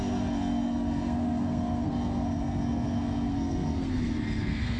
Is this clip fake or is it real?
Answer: fake